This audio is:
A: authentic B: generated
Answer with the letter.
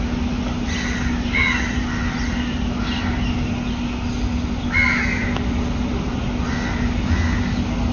A